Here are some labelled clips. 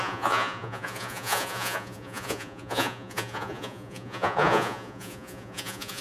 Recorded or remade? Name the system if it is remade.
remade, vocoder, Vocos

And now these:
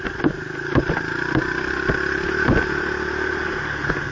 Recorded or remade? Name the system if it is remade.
recorded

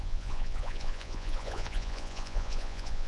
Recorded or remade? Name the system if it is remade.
remade, vocoder, Vocos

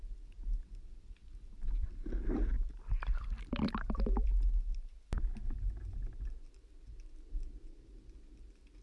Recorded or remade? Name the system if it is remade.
recorded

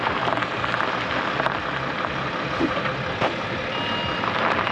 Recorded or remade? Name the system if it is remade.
recorded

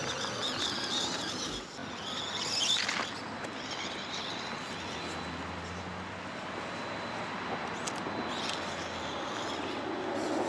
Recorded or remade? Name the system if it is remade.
recorded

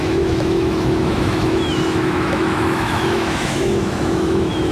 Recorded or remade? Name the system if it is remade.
remade, autoencoder, DAC-VAE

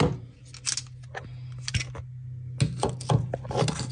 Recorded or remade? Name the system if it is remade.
recorded